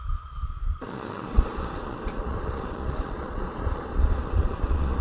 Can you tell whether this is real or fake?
fake